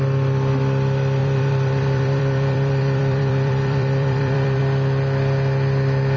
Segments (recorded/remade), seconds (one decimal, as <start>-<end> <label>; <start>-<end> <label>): 0.0-1.2 recorded; 1.2-4.6 remade; 4.6-6.2 recorded